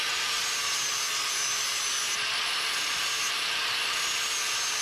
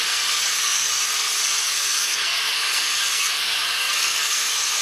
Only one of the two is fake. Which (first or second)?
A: second